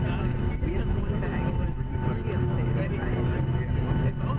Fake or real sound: real